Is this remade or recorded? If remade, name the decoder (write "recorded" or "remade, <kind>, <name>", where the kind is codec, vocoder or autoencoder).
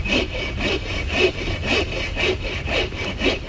remade, vocoder, BigVGAN v2